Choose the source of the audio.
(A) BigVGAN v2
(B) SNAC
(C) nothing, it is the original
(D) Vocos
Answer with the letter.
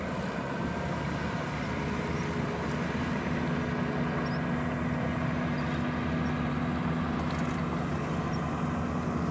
C